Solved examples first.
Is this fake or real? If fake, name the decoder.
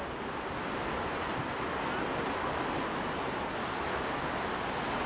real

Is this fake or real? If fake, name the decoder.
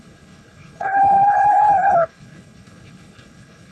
fake, codec, HILCodec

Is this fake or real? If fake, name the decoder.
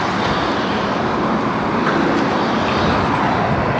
real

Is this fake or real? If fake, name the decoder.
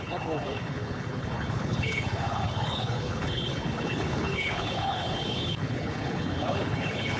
fake, codec, HILCodec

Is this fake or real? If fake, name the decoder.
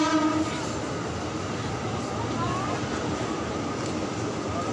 real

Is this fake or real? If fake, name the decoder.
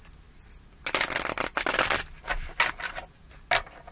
real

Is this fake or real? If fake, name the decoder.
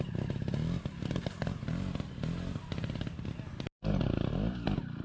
real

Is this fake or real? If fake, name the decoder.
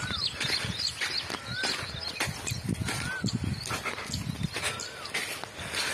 real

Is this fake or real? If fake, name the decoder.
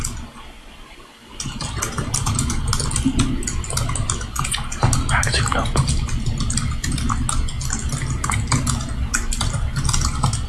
real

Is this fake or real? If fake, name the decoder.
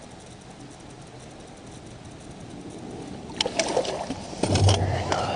real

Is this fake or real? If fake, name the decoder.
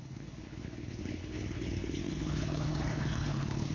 fake, codec, HILCodec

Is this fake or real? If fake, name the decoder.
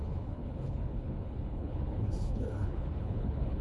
fake, codec, HILCodec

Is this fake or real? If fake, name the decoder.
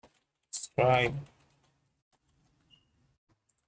real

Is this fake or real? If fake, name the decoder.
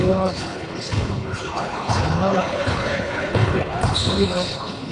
fake, codec, HILCodec